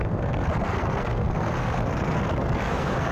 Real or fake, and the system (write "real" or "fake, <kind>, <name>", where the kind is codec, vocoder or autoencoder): fake, codec, SNAC